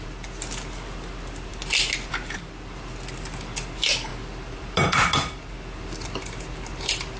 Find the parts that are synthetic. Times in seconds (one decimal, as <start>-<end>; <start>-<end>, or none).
none